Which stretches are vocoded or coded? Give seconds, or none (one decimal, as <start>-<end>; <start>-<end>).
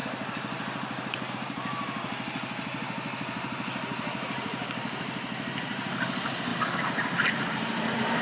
6.5-7.3